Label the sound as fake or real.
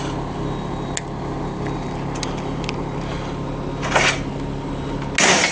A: real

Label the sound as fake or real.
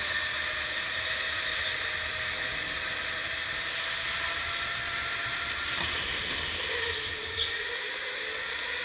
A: real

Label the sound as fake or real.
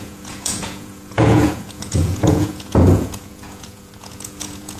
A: fake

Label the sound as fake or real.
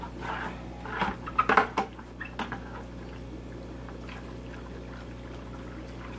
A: real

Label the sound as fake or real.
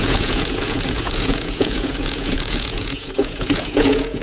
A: fake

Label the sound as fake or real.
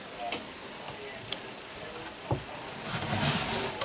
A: real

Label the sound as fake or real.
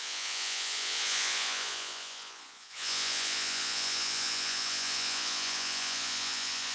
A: fake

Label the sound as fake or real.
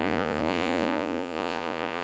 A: fake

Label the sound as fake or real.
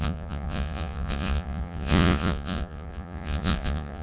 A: fake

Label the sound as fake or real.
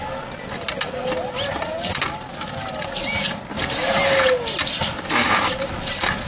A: real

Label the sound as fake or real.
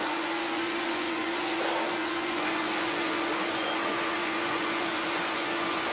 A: fake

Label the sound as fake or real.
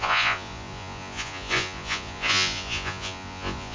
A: fake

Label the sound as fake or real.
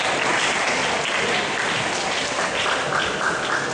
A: real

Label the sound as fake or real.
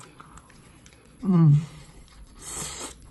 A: fake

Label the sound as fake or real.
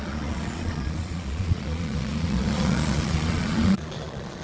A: fake